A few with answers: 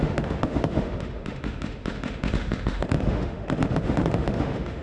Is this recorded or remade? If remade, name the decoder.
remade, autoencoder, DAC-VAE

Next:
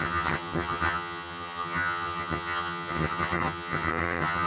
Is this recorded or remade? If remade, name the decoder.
remade, vocoder, HiFi-GAN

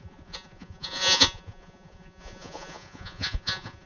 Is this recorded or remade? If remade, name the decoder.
remade, vocoder, Vocos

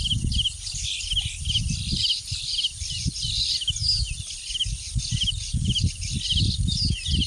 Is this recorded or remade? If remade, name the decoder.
recorded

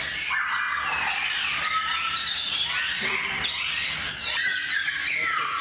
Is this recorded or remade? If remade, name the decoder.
recorded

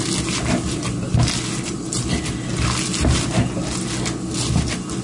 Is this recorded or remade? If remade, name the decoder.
recorded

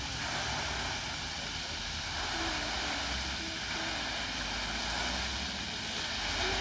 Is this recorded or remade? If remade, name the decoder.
recorded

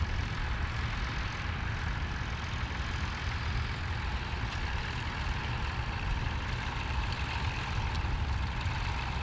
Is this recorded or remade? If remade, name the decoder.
recorded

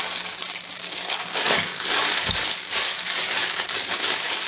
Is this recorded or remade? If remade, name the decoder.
remade, codec, DAC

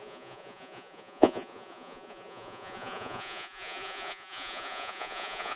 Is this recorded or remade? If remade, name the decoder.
remade, vocoder, Vocos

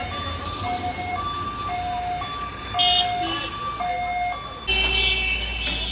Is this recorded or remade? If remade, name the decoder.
recorded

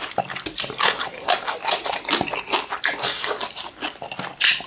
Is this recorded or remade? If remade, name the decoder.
recorded